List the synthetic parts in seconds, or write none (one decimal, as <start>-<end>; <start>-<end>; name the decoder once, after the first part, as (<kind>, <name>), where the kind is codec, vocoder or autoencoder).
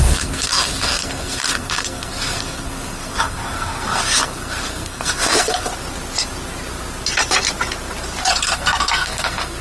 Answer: 0.0-5.7 (codec, SNAC); 8.3-9.6